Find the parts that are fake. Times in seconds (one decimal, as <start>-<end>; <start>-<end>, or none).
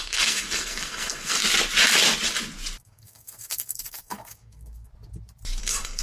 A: 0.0-1.4; 2.8-4.9; 5.6-6.0